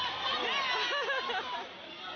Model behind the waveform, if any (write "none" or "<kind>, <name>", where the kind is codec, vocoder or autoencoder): none